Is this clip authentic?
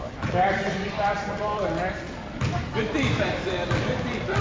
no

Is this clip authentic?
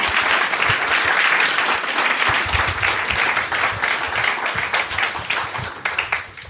yes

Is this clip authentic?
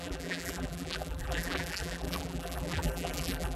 no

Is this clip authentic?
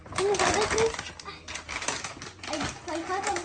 yes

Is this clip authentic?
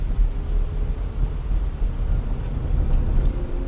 yes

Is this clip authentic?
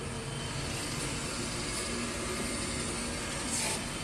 no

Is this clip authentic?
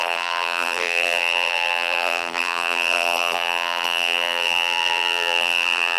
no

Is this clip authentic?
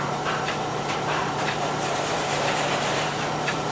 no